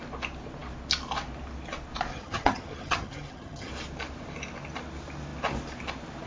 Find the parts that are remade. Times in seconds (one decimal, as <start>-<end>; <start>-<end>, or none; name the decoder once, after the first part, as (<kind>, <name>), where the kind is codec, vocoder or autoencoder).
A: 2.1-3.7 (vocoder, HiFi-GAN)